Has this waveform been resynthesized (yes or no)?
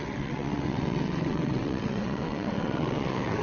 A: yes